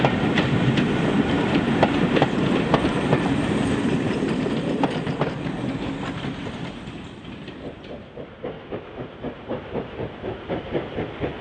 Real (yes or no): no